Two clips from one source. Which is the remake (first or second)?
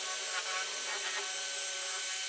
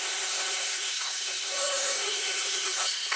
second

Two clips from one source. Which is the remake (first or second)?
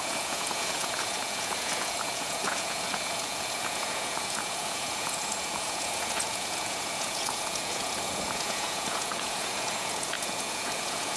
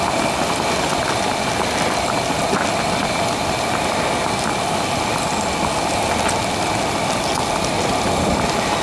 first